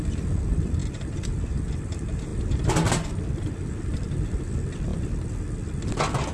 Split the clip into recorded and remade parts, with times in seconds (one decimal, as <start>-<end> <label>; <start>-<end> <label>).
0.0-6.3 recorded